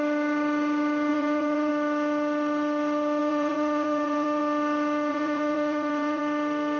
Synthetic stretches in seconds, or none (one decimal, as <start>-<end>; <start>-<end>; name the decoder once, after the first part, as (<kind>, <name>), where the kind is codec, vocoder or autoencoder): 1.1-1.7 (vocoder, Vocos); 3.2-4.4; 5.1-6.2